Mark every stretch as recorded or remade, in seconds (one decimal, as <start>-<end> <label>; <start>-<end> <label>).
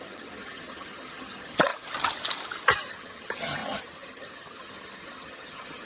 0.0-1.7 remade; 1.7-2.9 recorded; 2.9-5.9 remade